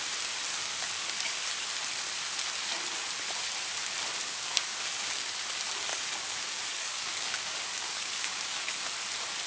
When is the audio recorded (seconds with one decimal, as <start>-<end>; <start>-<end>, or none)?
0.0-0.5; 1.4-4.2; 5.2-5.9; 9.1-9.5